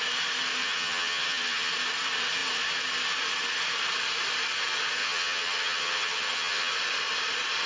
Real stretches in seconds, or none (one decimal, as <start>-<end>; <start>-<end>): 0.0-0.6; 1.7-5.0; 6.7-7.7